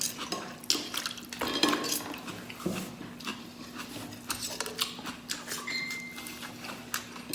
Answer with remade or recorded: recorded